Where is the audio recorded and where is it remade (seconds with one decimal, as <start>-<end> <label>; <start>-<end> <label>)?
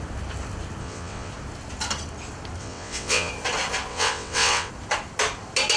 0.0-0.8 recorded; 0.8-1.3 remade; 1.3-2.6 recorded; 2.6-3.3 remade; 3.3-3.9 recorded; 3.9-4.7 remade; 4.7-5.8 recorded